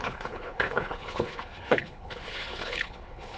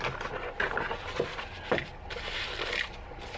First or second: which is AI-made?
first